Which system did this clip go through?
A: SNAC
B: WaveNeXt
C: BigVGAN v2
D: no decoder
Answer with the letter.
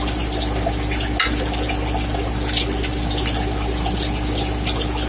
D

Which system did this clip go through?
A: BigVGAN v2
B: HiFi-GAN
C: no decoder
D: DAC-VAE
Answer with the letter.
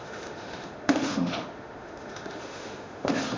D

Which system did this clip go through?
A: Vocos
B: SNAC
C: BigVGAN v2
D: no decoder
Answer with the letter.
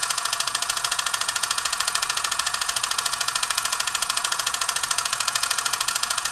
A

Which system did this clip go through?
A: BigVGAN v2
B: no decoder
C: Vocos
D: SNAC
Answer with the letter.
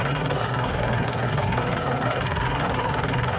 D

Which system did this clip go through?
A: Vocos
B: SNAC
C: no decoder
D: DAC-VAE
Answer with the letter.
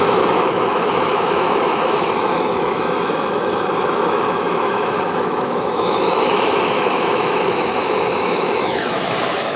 D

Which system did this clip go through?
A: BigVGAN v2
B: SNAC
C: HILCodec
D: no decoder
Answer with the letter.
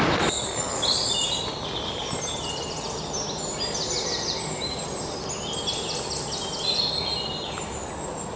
D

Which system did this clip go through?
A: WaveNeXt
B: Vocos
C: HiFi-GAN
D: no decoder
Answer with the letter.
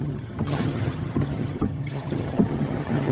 C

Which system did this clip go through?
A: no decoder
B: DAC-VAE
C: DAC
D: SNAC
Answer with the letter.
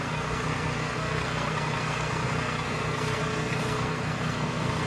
D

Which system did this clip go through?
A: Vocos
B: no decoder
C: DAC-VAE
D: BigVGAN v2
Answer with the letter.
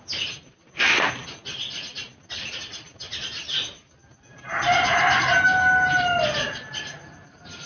B